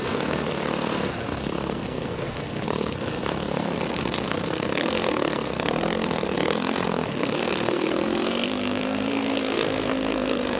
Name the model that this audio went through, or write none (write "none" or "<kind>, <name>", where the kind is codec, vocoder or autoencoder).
codec, SNAC